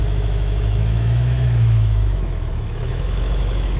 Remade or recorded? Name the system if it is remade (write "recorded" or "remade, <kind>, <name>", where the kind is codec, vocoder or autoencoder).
remade, autoencoder, DAC-VAE